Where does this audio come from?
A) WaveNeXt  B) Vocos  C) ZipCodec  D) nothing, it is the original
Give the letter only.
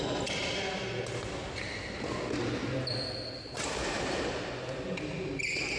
D